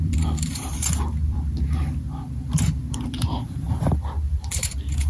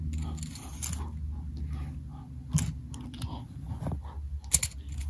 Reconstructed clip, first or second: first